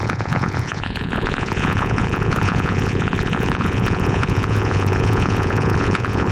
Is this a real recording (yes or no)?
no